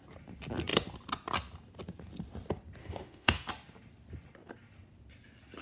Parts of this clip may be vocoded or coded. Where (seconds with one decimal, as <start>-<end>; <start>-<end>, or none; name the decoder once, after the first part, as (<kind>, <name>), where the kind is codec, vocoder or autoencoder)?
2.8-3.5 (autoencoder, DAC-VAE)